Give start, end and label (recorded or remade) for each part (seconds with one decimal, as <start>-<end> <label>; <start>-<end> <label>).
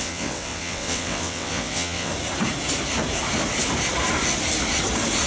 0.0-2.1 remade; 2.1-5.3 recorded